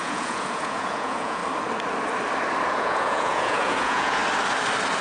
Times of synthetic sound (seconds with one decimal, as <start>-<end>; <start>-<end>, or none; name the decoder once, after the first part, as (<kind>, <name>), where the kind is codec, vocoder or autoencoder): 0.0-1.4 (vocoder, Vocos); 2.7-4.2